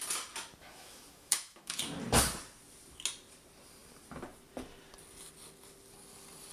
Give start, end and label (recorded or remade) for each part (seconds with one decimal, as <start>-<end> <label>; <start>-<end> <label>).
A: 0.0-0.6 recorded; 0.6-1.8 remade; 1.8-6.5 recorded